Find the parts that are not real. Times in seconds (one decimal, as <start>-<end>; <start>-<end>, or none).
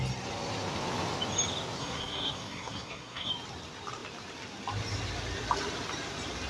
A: 1.8-3.3